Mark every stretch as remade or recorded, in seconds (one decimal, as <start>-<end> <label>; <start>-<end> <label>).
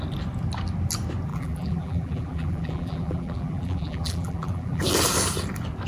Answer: 0.0-1.3 recorded; 1.3-4.8 remade; 4.8-5.9 recorded